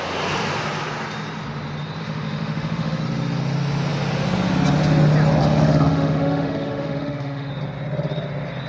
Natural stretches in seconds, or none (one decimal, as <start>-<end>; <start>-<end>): 0.0-2.0; 3.0-5.4; 7.5-8.7